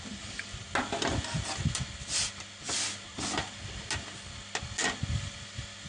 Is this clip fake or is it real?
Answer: real